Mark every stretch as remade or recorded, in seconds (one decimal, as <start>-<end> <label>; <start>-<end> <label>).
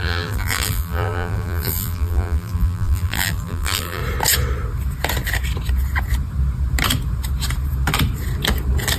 0.0-4.0 remade; 4.0-9.0 recorded